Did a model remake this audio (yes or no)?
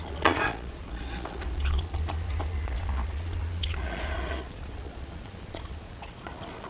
yes